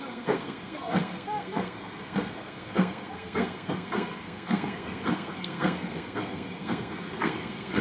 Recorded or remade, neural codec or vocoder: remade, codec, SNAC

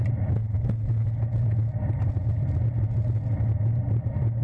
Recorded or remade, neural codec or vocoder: recorded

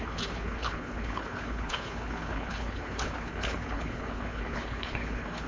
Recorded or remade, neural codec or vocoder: remade, codec, HILCodec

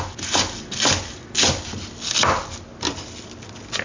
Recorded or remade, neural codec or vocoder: recorded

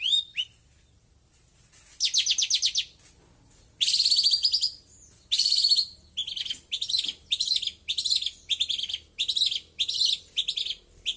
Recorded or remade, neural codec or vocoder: recorded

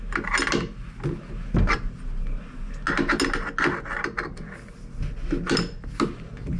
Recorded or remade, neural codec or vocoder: recorded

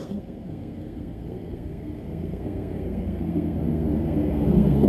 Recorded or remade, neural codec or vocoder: remade, codec, SNAC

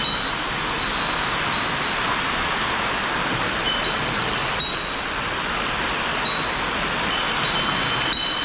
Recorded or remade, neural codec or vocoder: recorded